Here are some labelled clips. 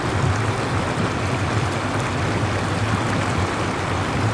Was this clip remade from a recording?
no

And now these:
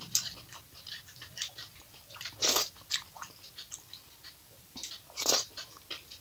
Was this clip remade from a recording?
no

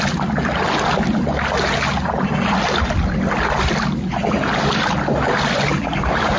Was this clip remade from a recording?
no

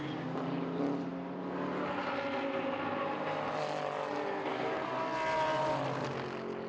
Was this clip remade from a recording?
no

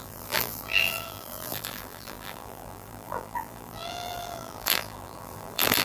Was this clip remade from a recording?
yes